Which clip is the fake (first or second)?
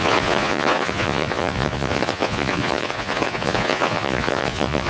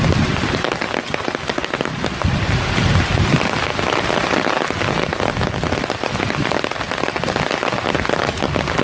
first